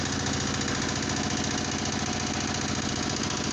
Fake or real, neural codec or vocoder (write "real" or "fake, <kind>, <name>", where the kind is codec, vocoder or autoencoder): real